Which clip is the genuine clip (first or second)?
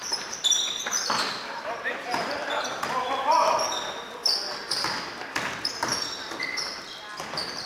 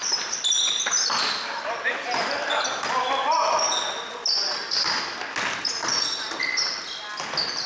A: second